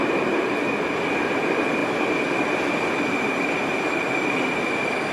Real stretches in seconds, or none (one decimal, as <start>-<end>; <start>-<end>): 0.0-5.1